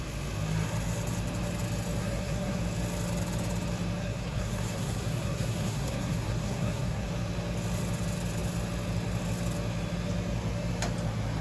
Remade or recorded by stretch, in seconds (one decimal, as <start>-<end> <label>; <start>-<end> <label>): 0.0-2.0 recorded; 2.0-2.6 remade; 2.6-4.0 recorded; 4.0-7.1 remade; 7.1-11.4 recorded